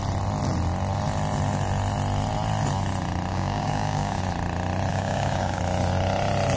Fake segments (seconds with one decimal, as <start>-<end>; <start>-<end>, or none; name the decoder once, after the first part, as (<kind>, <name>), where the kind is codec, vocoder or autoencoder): 3.3-4.2 (codec, DAC); 4.9-5.6